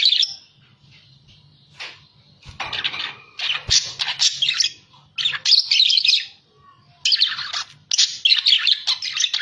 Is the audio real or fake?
real